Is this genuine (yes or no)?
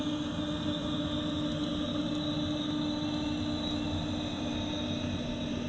yes